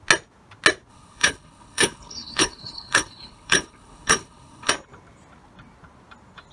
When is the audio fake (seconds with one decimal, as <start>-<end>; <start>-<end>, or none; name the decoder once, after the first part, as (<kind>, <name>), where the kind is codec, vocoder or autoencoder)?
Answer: 0.9-4.7 (codec, HILCodec)